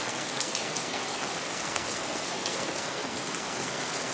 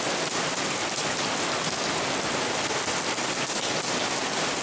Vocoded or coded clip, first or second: first